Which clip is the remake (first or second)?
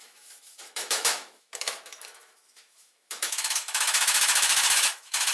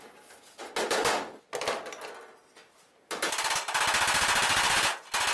first